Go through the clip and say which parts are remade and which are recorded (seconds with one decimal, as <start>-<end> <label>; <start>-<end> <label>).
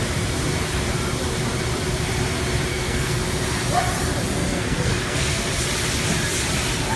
0.0-2.7 recorded; 2.7-3.2 remade; 3.2-4.4 recorded; 4.4-5.4 remade; 5.4-7.0 recorded